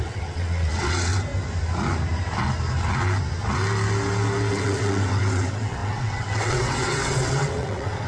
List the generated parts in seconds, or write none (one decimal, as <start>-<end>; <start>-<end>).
0.0-1.1; 4.5-8.1